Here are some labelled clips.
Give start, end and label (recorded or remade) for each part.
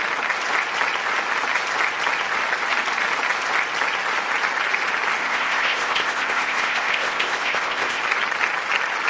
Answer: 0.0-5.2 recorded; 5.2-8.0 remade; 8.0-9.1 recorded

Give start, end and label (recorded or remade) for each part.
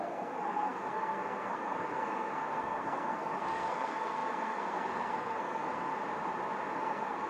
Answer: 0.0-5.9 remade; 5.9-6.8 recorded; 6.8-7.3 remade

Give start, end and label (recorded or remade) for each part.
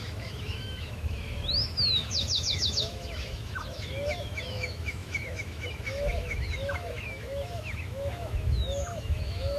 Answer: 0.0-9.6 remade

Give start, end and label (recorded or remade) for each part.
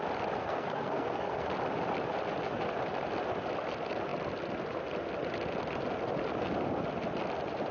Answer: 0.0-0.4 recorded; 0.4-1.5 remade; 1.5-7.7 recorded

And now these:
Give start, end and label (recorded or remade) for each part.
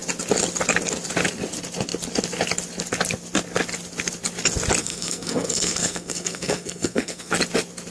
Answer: 0.0-4.8 recorded; 4.8-7.3 remade; 7.3-7.9 recorded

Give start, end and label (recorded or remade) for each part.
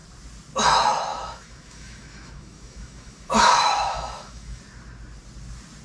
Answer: 0.0-1.1 recorded; 1.1-4.6 remade; 4.6-5.8 recorded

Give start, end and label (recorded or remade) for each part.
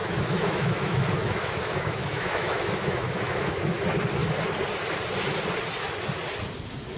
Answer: 0.0-3.8 remade; 3.8-7.0 recorded